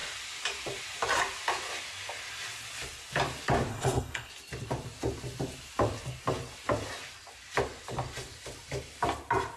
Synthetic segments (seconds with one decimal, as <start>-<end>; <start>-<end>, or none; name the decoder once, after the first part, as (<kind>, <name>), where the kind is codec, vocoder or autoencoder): 3.7-4.3 (codec, HILCodec)

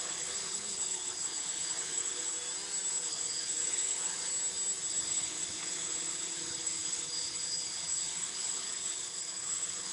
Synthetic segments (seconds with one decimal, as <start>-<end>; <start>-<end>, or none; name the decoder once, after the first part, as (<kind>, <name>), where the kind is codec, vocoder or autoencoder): 0.0-2.3 (codec, HILCodec); 2.9-4.3; 4.9-9.9

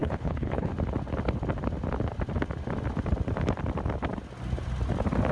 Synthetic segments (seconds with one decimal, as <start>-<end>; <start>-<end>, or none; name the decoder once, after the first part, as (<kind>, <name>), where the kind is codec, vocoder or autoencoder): 0.0-0.7 (codec, HILCodec)

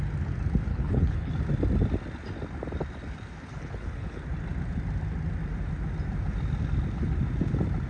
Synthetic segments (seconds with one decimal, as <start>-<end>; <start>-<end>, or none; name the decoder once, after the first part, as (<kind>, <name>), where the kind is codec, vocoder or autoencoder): 0.7-1.3 (codec, HILCodec); 3.5-4.2

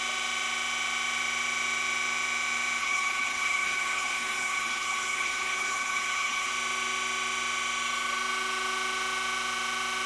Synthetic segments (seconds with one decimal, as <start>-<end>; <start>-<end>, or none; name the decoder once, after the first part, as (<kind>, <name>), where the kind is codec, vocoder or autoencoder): 2.8-6.5 (codec, HILCodec)

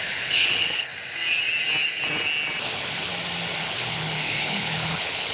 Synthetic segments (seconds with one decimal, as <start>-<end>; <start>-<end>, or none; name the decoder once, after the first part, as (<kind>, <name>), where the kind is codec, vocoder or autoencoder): 0.0-0.9 (codec, HILCodec); 2.6-3.1; 3.6-5.3

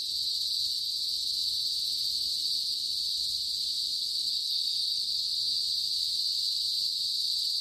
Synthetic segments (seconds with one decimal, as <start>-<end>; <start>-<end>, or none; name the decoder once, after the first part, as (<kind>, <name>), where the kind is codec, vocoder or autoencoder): 4.0-5.3 (codec, HILCodec)